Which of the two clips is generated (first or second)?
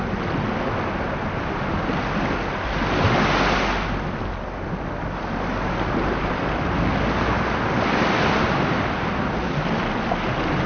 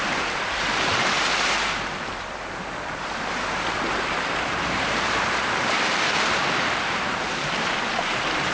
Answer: second